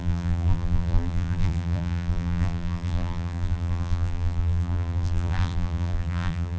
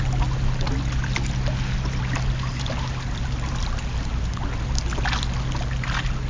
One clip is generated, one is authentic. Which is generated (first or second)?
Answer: first